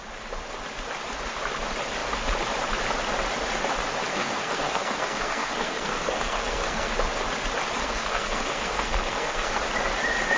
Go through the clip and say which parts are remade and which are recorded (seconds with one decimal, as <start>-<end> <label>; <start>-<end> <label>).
0.0-4.1 recorded; 4.1-6.9 remade; 6.9-7.8 recorded; 7.8-9.6 remade; 9.6-10.4 recorded